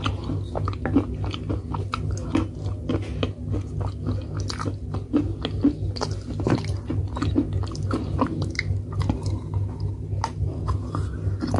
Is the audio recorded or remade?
recorded